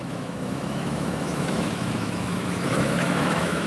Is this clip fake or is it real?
fake